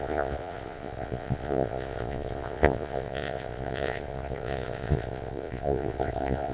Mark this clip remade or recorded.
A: remade